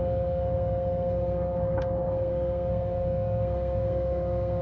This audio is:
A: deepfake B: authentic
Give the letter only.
A